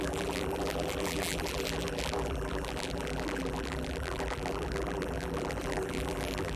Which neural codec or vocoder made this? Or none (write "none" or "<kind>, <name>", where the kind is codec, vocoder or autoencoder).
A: vocoder, BigVGAN v2